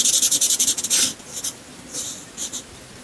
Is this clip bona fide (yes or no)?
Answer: yes